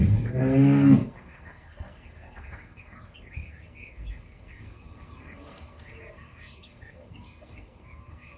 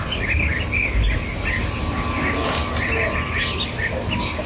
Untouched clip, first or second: second